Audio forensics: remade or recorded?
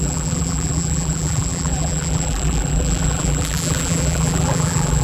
remade